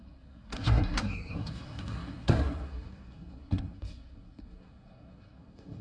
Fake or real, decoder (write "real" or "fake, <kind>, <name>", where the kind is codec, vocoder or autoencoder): fake, codec, SNAC